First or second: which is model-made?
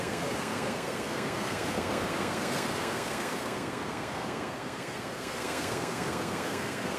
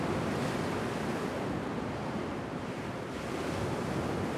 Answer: first